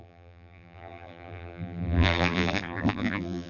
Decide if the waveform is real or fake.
fake